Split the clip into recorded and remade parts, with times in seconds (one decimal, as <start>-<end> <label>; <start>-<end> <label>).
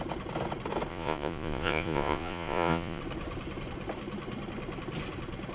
0.0-0.9 recorded; 0.9-3.0 remade; 3.0-5.5 recorded